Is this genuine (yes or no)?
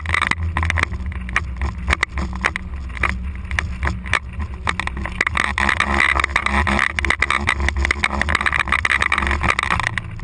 yes